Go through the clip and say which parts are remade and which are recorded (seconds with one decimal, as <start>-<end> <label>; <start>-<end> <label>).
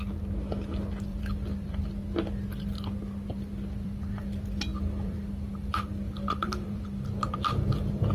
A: 0.0-1.1 recorded; 1.1-1.9 remade; 1.9-3.3 recorded; 3.3-4.3 remade; 4.3-4.7 recorded; 4.7-8.1 remade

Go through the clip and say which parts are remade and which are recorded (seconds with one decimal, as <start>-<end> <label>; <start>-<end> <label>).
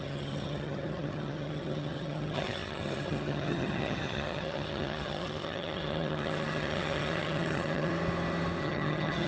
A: 0.0-7.9 remade; 7.9-8.6 recorded; 8.6-9.3 remade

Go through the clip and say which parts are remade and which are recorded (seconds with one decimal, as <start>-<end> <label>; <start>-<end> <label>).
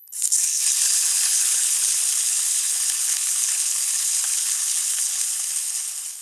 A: 0.0-6.2 remade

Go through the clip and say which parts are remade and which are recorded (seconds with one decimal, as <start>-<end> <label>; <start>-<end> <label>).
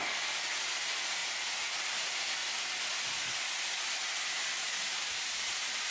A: 0.0-5.9 recorded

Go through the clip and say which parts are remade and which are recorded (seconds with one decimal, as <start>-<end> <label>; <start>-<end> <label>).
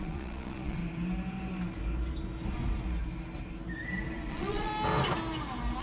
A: 0.0-0.8 remade; 0.8-4.3 recorded; 4.3-4.7 remade; 4.7-5.8 recorded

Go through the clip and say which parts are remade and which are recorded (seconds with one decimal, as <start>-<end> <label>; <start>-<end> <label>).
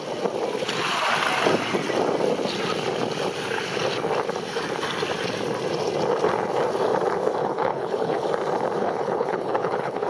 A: 0.0-7.4 recorded; 7.4-8.3 remade; 8.3-8.8 recorded; 8.8-10.1 remade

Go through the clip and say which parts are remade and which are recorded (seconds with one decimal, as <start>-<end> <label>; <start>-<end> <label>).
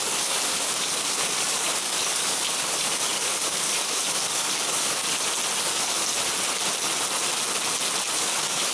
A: 0.0-5.0 remade; 5.0-5.6 recorded; 5.6-6.1 remade; 6.1-8.1 recorded; 8.1-8.7 remade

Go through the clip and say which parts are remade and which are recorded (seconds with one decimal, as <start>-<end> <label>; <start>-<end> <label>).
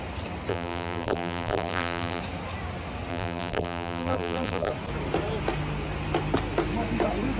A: 0.0-0.5 recorded; 0.5-2.2 remade; 2.2-3.1 recorded; 3.1-4.7 remade; 4.7-7.4 recorded